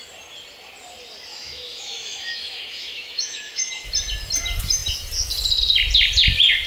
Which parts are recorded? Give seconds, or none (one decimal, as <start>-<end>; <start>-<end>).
0.0-1.3; 3.9-6.7